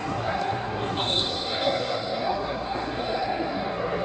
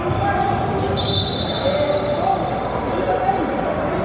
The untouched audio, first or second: second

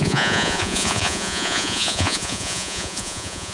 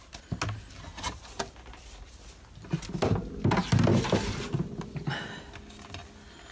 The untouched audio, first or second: second